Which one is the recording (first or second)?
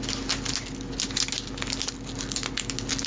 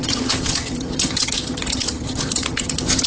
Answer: first